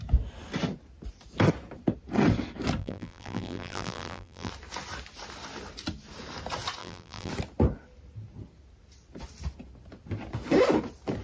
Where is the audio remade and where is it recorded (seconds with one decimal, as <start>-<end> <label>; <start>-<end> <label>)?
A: 0.0-2.8 recorded; 2.8-4.5 remade; 4.5-6.8 recorded; 6.8-7.3 remade; 7.3-11.2 recorded

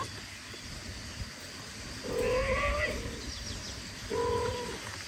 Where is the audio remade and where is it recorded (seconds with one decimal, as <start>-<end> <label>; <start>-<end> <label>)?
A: 0.0-5.1 recorded

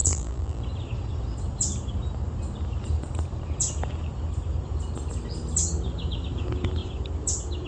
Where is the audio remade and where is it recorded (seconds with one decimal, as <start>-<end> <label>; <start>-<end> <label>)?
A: 0.0-0.6 remade; 0.6-7.7 recorded

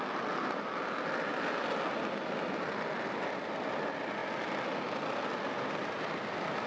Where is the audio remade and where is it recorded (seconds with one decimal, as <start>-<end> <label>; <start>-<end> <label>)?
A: 0.0-6.7 recorded

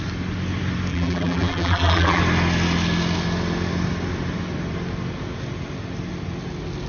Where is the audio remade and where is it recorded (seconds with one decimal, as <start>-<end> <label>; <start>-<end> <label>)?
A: 0.0-0.9 recorded; 0.9-2.2 remade; 2.2-6.9 recorded

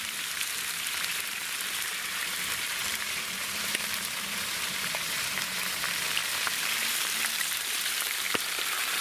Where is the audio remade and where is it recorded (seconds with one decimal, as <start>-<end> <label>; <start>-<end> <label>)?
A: 0.0-9.0 remade